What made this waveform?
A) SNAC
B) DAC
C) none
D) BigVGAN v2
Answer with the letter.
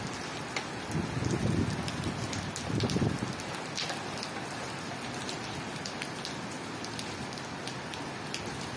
C